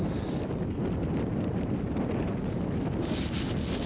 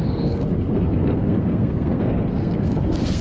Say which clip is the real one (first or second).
first